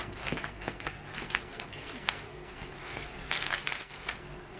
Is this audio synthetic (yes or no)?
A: yes